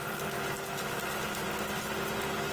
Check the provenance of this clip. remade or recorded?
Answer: recorded